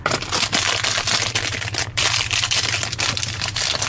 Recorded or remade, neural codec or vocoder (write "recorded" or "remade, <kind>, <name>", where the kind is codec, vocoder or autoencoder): remade, vocoder, BigVGAN v2